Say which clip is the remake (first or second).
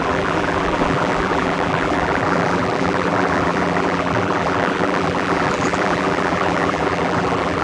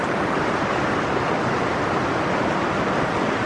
first